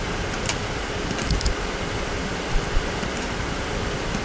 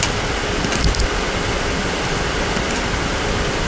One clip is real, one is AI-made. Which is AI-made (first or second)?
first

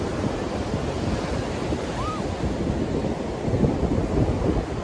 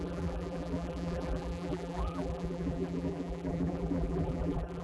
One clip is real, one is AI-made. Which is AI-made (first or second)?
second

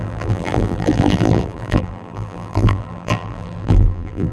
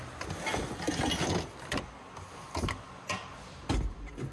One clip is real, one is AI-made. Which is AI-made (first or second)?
first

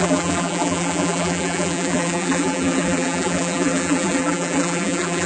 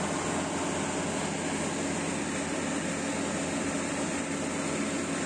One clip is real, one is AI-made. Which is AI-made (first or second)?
first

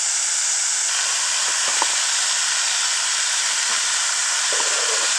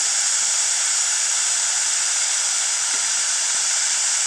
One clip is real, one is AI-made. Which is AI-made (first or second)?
second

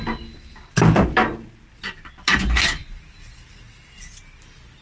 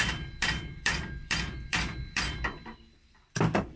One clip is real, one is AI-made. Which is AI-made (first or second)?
second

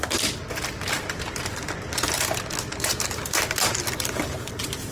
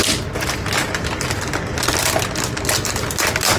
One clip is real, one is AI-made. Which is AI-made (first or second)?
first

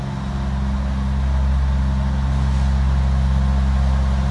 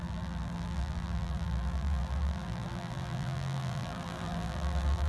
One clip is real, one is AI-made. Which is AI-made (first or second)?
second